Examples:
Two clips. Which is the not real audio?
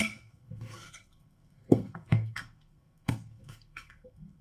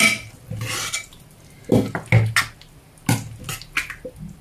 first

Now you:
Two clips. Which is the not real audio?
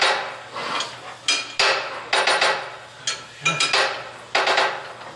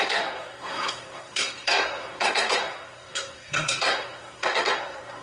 second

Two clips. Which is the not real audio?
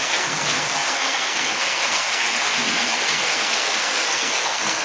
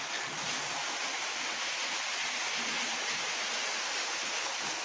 first